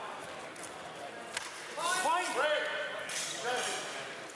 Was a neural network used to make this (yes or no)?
no